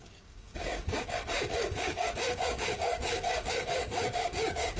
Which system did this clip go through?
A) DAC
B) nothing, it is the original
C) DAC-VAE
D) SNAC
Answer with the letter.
A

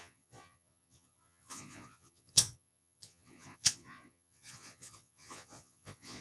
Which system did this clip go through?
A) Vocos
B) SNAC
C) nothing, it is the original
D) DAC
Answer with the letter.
A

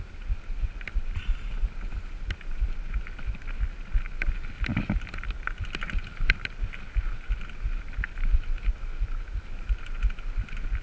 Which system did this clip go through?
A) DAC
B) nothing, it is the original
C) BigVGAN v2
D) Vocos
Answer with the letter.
B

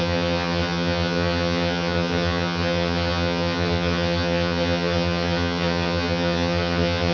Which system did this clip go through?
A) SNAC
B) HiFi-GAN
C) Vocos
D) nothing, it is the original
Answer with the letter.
B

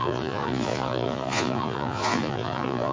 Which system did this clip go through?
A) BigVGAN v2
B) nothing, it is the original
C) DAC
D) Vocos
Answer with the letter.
D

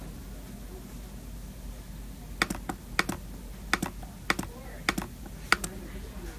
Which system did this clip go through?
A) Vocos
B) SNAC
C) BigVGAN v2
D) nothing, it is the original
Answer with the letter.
D